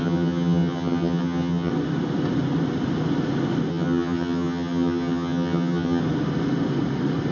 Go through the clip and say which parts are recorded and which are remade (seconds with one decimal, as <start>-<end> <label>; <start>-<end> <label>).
0.0-1.7 remade; 1.7-3.7 recorded; 3.7-6.0 remade; 6.0-7.3 recorded